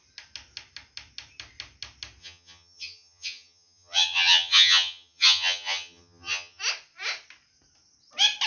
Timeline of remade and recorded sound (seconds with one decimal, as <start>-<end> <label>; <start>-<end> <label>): 0.0-2.2 recorded; 2.2-6.6 remade; 6.6-8.5 recorded